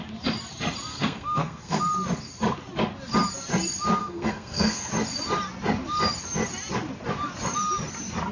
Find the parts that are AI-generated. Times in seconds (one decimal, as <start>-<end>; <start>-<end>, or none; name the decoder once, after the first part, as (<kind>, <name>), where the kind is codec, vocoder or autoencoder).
0.9-1.8 (codec, SNAC); 4.0-4.9